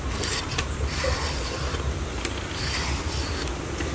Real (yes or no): yes